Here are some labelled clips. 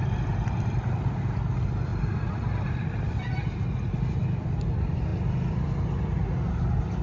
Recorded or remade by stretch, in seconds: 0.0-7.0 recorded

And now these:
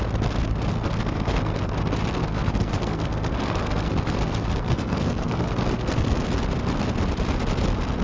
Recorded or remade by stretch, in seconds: 0.0-0.7 recorded; 0.7-1.6 remade; 1.6-2.2 recorded; 2.2-6.3 remade; 6.3-8.0 recorded

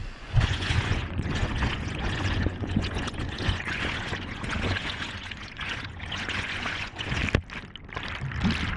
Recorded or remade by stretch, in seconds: 0.0-7.2 remade; 7.2-8.8 recorded

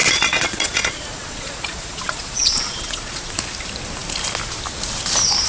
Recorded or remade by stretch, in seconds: 0.0-3.3 remade; 3.3-5.5 recorded

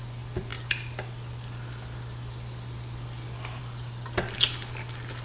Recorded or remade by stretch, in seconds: 0.0-5.2 recorded

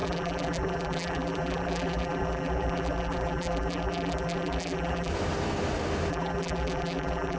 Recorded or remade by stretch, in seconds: 0.0-5.1 remade; 5.1-6.1 recorded; 6.1-7.4 remade

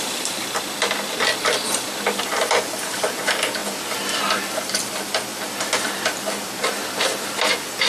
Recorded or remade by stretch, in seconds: 0.0-7.9 recorded